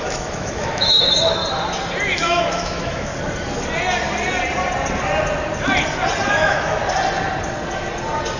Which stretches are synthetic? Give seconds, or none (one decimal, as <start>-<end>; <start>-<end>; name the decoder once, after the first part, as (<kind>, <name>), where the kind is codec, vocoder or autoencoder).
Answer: 0.0-1.4 (autoencoder, DAC-VAE); 2.2-3.1; 6.3-6.8